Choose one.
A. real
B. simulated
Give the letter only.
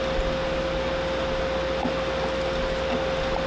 A